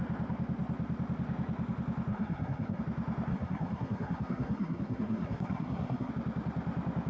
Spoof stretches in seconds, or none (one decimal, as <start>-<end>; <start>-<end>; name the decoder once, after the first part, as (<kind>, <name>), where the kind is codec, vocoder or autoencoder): 2.1-2.8 (codec, SNAC); 3.3-6.1